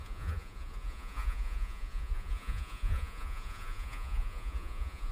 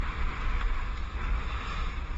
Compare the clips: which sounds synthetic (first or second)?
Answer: first